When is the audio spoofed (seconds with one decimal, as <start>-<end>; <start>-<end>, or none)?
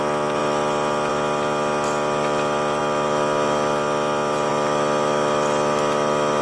none